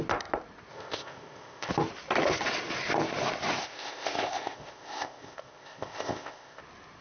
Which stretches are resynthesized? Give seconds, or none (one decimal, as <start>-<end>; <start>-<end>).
0.7-1.7; 3.6-6.6